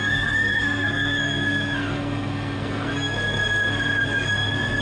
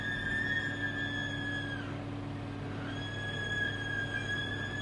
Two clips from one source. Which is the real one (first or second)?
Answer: second